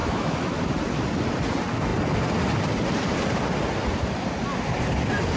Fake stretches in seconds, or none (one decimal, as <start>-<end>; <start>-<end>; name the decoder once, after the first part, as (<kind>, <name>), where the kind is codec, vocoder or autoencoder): 0.0-0.6 (autoencoder, DAC-VAE)